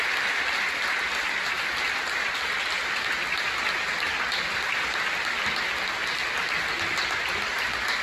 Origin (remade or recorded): recorded